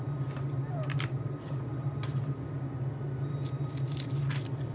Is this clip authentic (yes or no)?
yes